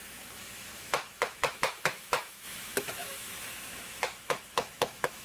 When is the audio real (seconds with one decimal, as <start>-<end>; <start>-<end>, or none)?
none

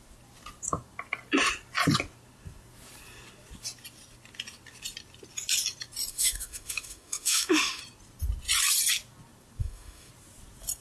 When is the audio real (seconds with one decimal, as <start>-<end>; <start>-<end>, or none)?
0.0-6.1; 7.8-9.6; 10.1-10.8

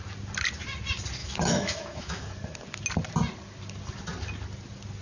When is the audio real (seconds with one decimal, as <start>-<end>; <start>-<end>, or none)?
0.0-1.2; 2.3-5.0

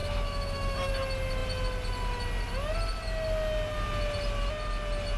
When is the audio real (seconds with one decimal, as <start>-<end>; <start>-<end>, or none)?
0.9-5.2

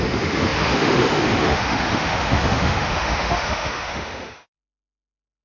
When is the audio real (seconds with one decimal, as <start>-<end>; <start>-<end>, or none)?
none

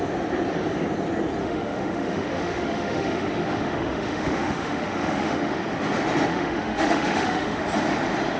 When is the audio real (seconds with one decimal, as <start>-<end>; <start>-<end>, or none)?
0.0-1.4; 5.6-6.3; 7.6-8.4

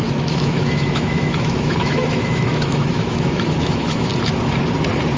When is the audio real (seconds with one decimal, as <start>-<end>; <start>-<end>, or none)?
4.1-5.2

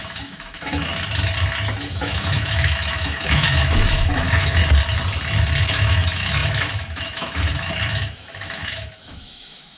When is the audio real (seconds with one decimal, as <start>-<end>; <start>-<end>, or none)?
0.9-1.8; 4.6-5.6